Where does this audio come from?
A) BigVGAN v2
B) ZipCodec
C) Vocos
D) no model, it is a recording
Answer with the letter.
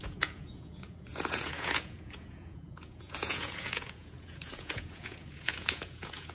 C